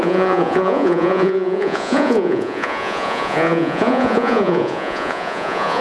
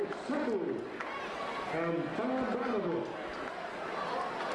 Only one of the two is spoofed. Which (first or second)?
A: first